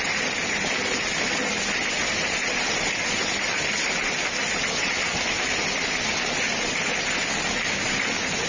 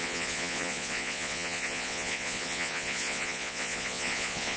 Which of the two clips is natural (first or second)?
first